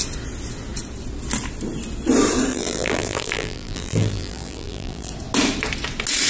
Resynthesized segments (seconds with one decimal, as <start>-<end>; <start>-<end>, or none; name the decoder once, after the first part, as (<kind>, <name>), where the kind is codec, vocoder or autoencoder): 2.5-5.1 (vocoder, BigVGAN v2)